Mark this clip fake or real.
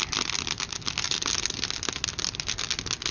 real